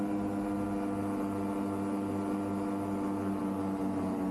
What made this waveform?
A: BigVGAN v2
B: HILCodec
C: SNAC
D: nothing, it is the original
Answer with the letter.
D